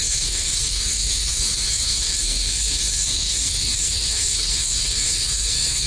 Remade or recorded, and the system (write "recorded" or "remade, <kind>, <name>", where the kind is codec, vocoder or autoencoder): remade, codec, SNAC